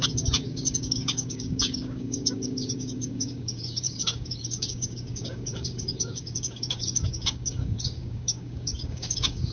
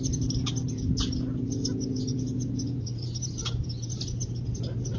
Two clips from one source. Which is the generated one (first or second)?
first